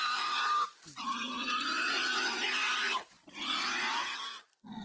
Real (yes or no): yes